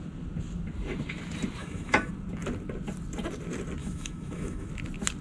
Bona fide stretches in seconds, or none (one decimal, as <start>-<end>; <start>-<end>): 0.0-1.6; 2.1-3.8; 4.7-5.2